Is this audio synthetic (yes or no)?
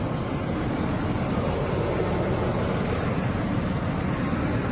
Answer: no